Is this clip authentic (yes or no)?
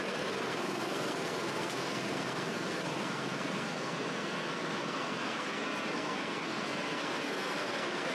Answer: no